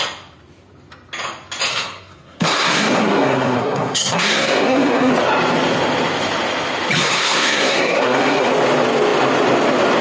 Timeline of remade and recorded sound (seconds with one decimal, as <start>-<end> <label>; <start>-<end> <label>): 0.0-1.7 recorded; 1.7-5.1 remade; 5.1-7.0 recorded; 7.0-8.5 remade; 8.5-10.0 recorded